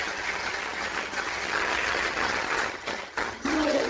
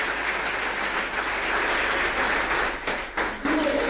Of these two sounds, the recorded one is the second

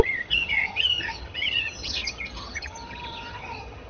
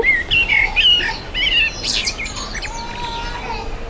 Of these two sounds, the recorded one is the second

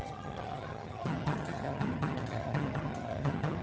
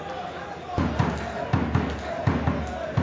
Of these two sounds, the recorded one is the second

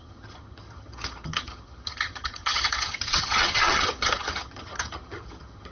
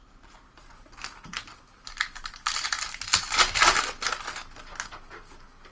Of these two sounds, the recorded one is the second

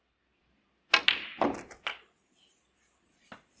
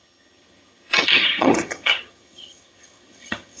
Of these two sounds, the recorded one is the first